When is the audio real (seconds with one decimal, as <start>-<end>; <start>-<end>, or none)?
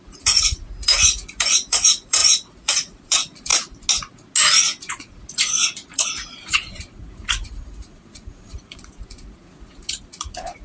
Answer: 3.5-4.9